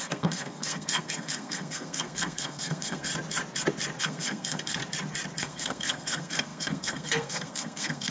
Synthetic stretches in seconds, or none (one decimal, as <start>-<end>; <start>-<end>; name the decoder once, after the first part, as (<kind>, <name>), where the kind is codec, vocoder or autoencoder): 0.0-3.1 (codec, SNAC); 4.0-4.8; 5.4-8.1